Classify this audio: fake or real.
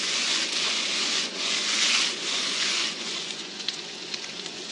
fake